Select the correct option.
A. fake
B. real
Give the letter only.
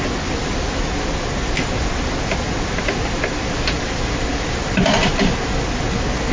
B